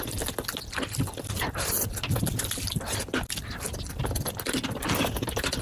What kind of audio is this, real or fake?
real